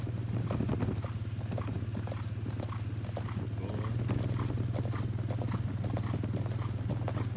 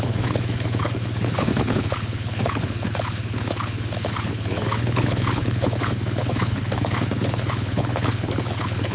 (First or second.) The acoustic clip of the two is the first